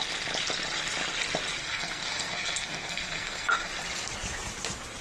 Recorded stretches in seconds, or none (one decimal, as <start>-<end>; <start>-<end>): 0.0-1.6; 3.7-5.0